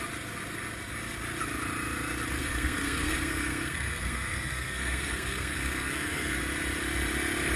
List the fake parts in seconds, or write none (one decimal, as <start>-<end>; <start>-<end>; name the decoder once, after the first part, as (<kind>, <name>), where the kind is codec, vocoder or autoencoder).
2.4-6.4 (codec, SNAC)